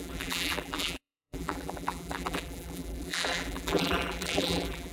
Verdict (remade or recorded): remade